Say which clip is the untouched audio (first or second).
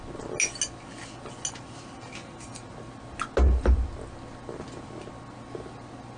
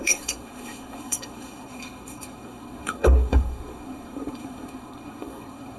first